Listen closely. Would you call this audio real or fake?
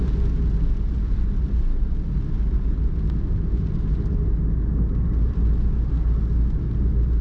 real